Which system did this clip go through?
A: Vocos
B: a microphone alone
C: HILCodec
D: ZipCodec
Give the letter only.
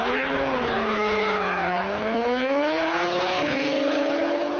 C